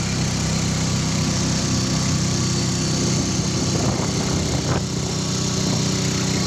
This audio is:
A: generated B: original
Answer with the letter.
B